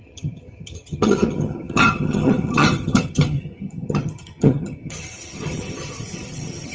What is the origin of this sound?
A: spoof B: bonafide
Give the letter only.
A